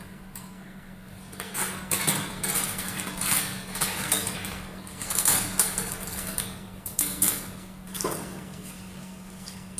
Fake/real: fake